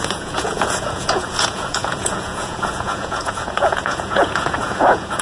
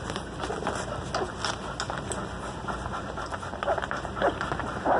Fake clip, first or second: first